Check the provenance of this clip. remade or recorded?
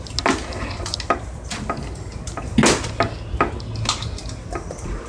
recorded